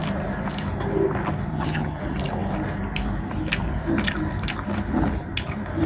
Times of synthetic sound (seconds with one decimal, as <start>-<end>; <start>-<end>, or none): 1.5-2.0